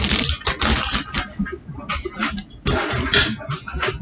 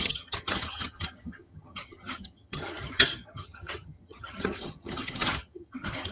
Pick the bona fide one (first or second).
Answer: first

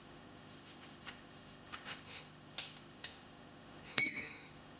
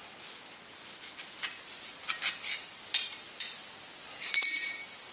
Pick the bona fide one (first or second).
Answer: second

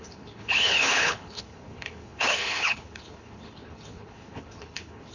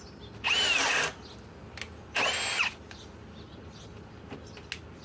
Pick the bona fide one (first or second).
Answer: second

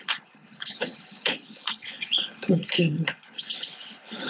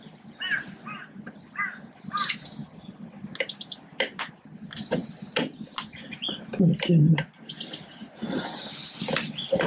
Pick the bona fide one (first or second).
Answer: second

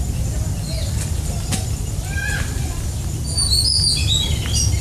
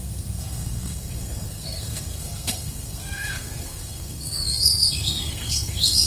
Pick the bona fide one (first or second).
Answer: first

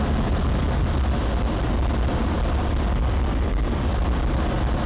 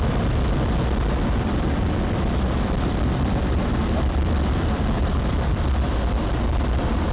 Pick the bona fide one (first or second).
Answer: first